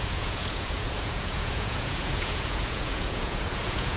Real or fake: fake